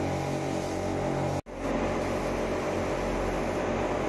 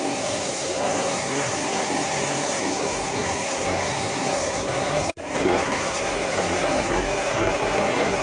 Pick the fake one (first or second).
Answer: second